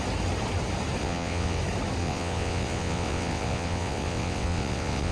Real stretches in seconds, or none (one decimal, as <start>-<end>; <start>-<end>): 0.0-1.0; 1.6-2.0